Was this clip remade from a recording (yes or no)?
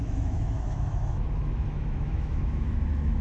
yes